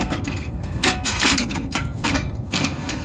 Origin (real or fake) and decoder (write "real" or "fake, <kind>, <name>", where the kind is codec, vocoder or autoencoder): fake, codec, SNAC